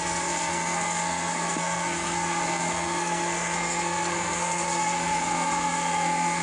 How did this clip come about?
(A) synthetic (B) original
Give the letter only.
A